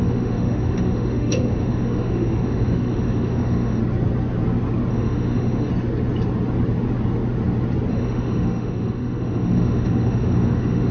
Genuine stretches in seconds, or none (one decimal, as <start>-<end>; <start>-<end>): 3.8-4.9; 5.7-7.9